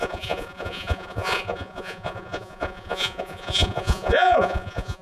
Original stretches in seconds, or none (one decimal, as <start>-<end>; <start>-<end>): none